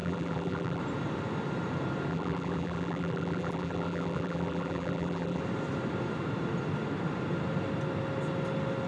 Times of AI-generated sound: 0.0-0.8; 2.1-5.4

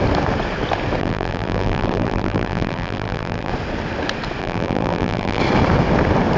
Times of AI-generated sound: 1.0-3.5; 4.4-5.4